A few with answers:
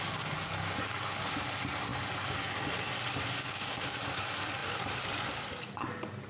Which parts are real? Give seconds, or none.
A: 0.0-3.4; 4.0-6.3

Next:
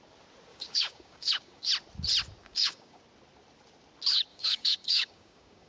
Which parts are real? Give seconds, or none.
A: 0.0-0.5; 1.6-2.4; 3.0-4.3

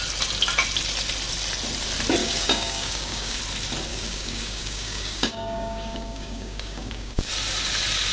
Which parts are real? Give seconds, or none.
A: 0.0-2.2; 3.4-3.9; 7.3-8.1

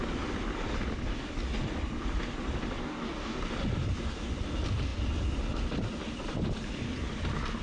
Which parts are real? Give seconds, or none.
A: 0.0-2.8; 3.4-7.6

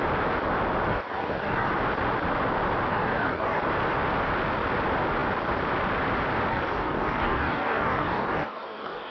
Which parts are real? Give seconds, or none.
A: 0.0-0.9; 1.7-2.9; 3.6-6.5